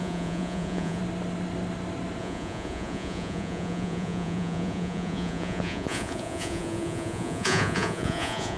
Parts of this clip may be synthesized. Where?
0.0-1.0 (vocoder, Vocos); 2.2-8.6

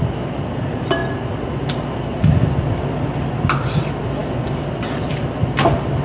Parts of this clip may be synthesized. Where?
none

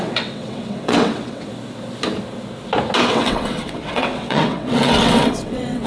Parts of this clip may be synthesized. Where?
0.0-1.5 (vocoder, WaveNeXt); 3.1-5.9

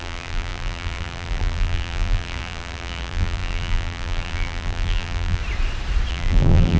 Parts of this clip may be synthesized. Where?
0.0-5.4 (vocoder, BigVGAN v2); 6.1-6.8

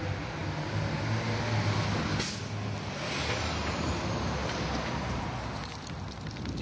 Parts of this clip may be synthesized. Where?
none

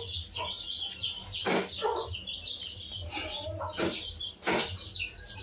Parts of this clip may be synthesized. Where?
none

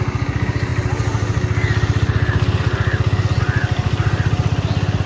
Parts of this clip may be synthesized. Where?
none